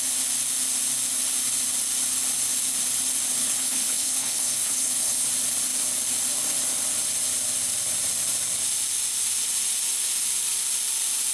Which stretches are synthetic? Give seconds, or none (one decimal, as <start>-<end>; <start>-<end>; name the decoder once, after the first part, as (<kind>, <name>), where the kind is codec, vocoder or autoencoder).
3.4-5.3 (codec, HILCodec)